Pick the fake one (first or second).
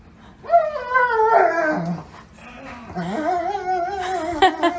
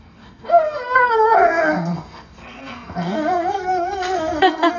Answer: second